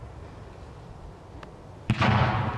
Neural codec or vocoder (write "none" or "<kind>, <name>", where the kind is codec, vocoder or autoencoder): none